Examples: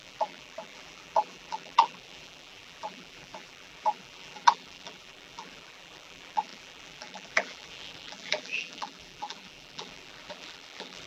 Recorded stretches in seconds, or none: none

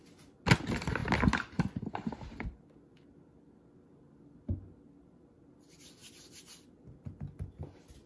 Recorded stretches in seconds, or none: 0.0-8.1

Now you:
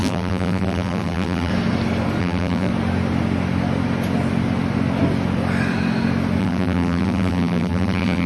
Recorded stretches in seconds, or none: 1.5-2.2; 2.7-6.4

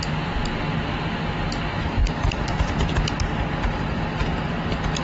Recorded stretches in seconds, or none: 0.0-2.0; 2.9-5.0

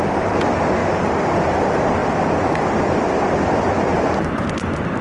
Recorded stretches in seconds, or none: 0.0-0.8; 1.6-5.0